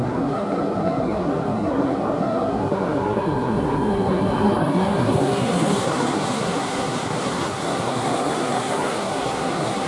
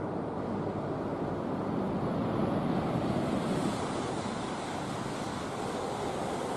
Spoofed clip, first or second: first